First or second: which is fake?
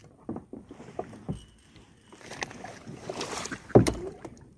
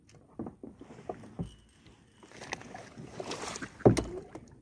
first